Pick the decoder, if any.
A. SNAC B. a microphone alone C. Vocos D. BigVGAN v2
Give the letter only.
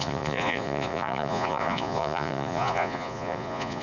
C